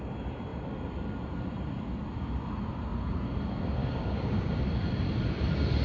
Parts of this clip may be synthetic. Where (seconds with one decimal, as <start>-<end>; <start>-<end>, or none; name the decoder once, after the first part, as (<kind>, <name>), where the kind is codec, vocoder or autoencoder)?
3.8-4.7 (codec, DAC)